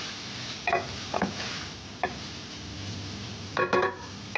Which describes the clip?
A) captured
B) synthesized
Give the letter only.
A